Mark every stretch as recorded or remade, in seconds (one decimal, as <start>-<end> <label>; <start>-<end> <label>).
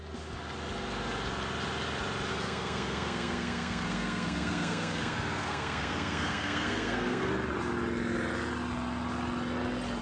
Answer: 0.0-2.3 recorded; 2.3-7.3 remade; 7.3-10.0 recorded